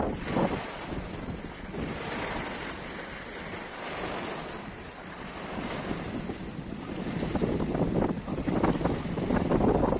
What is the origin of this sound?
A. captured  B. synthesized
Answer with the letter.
A